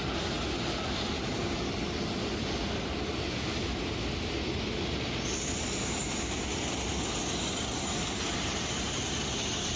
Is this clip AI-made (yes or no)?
no